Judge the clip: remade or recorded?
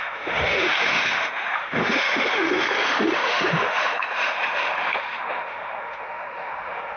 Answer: remade